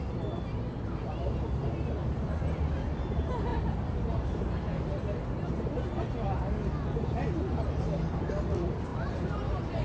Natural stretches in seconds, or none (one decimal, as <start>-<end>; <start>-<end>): 0.0-9.8

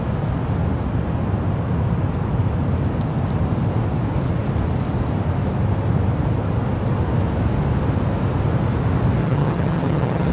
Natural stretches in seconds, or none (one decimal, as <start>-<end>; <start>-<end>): 0.0-9.2

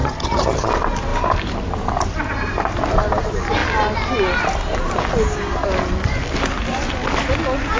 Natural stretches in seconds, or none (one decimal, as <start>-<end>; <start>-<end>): 0.7-7.8

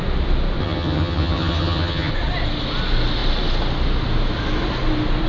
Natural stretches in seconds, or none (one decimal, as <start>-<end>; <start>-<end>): 0.0-0.6; 2.1-5.3

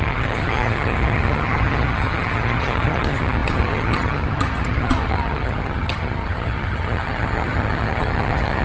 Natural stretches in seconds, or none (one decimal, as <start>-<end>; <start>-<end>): none

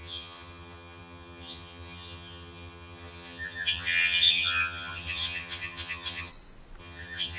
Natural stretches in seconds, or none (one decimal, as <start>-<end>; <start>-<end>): 6.3-6.8

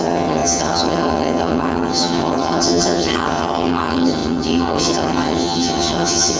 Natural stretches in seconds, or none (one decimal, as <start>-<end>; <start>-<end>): none

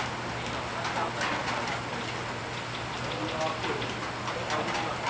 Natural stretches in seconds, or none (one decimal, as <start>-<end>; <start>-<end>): 0.0-5.1